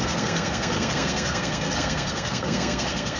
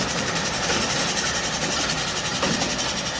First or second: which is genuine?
second